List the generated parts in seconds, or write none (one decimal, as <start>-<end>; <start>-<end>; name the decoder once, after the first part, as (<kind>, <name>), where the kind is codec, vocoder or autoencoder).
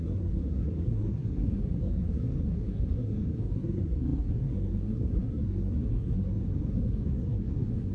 0.0-7.9 (codec, SNAC)